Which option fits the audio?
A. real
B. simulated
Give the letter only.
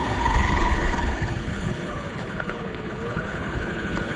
B